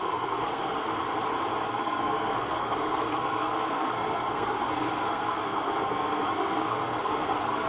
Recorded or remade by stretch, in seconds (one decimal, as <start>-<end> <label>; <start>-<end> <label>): 0.0-0.9 remade; 0.9-1.7 recorded; 1.7-7.7 remade